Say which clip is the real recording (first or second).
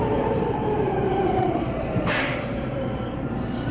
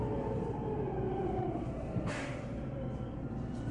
second